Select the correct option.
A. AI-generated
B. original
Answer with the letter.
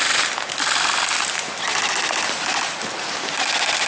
B